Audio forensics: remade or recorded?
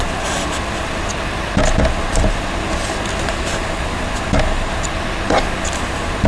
recorded